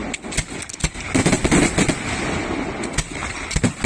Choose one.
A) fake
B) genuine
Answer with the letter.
B